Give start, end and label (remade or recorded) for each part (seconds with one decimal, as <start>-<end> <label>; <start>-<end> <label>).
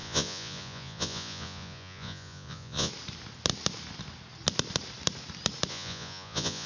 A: 0.0-2.9 remade; 2.9-5.7 recorded; 5.7-6.7 remade